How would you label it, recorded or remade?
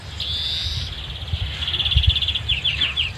recorded